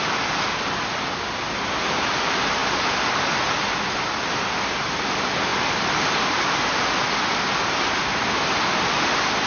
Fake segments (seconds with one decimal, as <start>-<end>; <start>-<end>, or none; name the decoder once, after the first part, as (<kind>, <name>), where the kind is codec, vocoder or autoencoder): 5.5-6.2 (vocoder, BigVGAN v2); 8.2-9.5